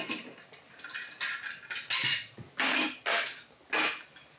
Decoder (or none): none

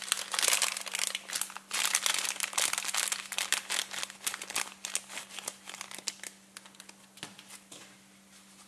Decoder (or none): none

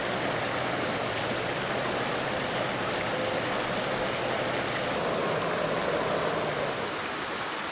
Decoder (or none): none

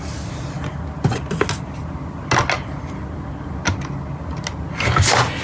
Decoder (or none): none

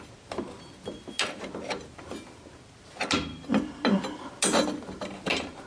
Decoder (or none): none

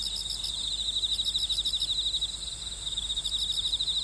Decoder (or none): none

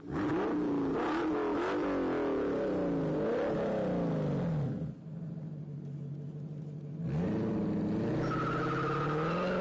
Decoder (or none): none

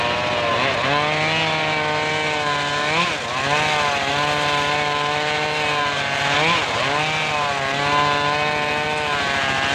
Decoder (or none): none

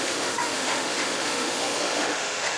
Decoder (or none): autoencoder, DAC-VAE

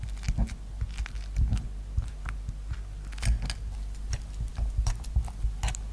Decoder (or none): none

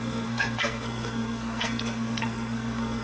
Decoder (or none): codec, SNAC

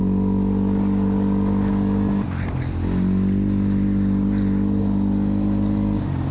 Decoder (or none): none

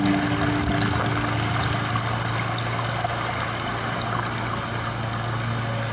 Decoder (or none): none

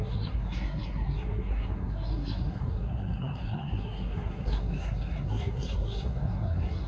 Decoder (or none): codec, SNAC